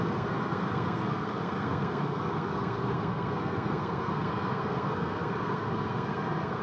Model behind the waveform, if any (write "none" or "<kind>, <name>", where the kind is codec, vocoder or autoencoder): codec, SNAC